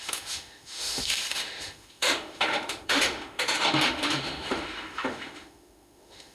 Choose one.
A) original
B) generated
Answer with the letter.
B